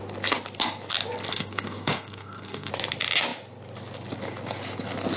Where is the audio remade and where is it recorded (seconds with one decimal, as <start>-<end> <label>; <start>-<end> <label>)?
0.0-1.3 recorded; 1.3-2.7 remade; 2.7-5.2 recorded